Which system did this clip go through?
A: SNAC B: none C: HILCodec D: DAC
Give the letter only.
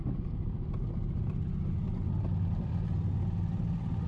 B